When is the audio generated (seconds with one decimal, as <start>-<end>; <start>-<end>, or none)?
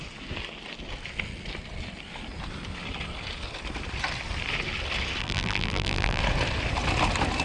5.2-6.2